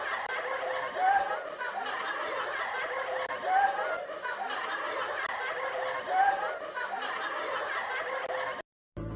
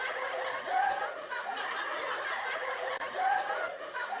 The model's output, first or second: second